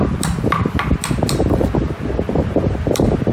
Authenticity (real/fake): real